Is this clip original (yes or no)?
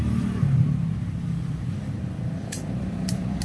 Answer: no